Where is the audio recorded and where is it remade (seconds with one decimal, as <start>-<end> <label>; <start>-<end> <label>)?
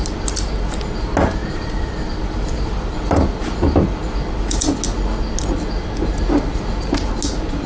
0.0-1.4 recorded; 1.4-4.7 remade; 4.7-7.7 recorded